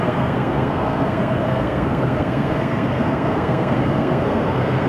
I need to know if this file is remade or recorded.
remade